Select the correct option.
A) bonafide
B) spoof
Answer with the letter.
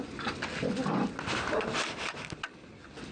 A